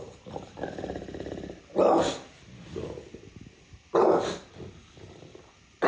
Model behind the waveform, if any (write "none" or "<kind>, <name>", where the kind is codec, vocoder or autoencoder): none